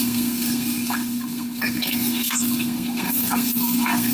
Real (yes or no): no